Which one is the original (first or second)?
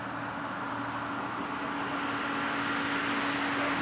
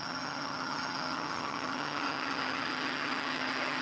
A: first